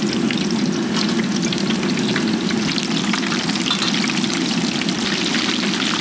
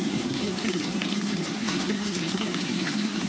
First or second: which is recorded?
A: first